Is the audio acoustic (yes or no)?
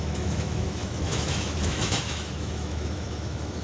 no